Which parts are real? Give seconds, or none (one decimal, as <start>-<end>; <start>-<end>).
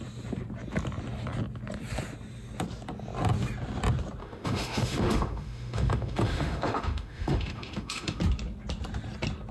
0.0-4.2; 8.2-9.5